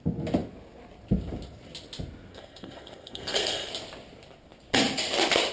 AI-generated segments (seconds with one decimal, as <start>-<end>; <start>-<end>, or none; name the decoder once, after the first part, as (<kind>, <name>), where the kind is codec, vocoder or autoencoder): 2.3-3.7 (codec, SNAC)